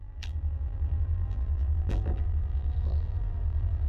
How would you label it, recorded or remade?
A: remade